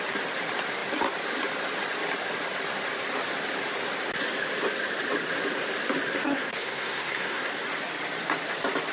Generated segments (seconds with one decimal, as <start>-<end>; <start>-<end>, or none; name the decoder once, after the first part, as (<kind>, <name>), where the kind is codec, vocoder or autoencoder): 6.1-7.5 (codec, SNAC)